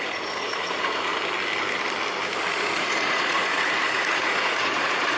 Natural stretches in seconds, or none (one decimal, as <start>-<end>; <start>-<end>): 1.1-2.5